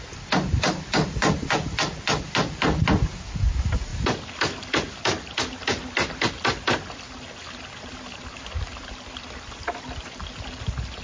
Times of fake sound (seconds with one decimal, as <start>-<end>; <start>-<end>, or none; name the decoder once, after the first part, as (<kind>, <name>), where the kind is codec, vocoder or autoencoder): none